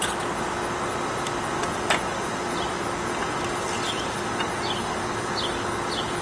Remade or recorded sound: recorded